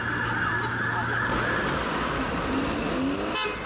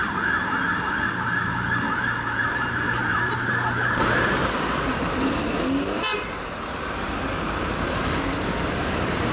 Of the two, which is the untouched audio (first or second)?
first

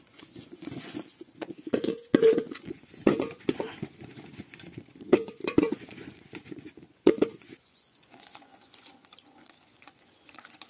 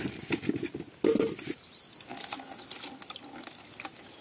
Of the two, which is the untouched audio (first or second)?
second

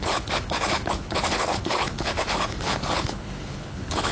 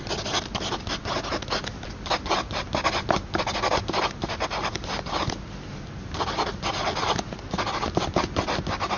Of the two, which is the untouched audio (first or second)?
second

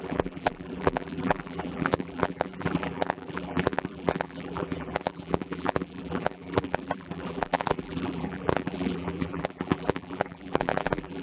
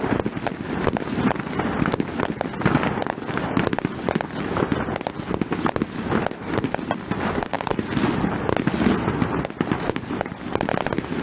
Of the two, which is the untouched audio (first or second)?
second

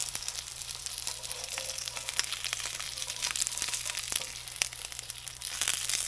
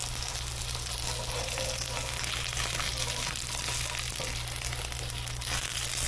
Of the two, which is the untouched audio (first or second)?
second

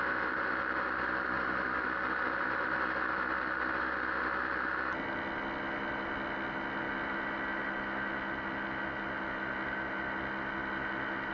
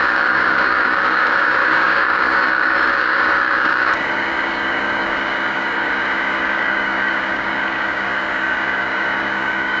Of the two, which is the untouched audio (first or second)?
first